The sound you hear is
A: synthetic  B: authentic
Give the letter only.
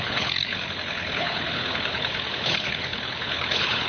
A